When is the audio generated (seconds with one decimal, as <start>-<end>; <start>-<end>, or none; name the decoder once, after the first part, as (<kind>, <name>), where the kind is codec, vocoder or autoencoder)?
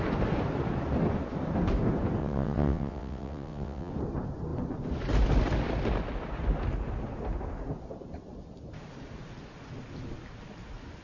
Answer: 2.2-3.9 (vocoder, WaveNeXt)